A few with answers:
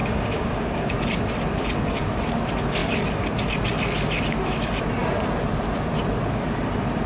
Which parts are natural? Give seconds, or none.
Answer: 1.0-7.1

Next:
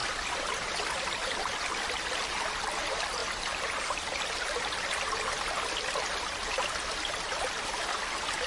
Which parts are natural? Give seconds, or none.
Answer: 1.7-3.2; 7.8-8.5

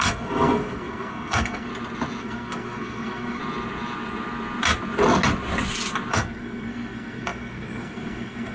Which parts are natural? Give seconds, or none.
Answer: 1.7-2.2; 3.4-6.1

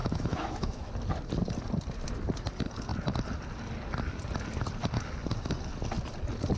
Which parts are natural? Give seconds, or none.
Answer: 0.9-6.6

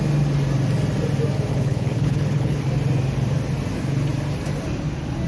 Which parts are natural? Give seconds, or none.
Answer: 0.0-1.5; 2.6-5.3

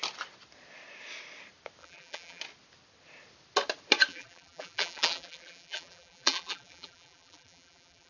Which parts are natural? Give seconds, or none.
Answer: 0.0-1.8; 2.4-4.1

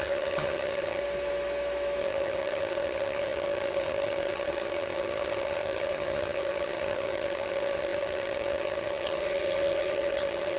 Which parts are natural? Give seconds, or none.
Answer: 1.0-2.0